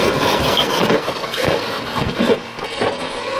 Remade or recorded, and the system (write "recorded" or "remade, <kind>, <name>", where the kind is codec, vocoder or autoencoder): remade, codec, SNAC